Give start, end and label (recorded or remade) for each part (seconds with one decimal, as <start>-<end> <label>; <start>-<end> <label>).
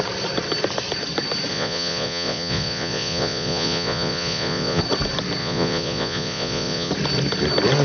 0.0-1.5 recorded; 1.5-4.8 remade; 4.8-5.4 recorded; 5.4-6.9 remade; 6.9-7.8 recorded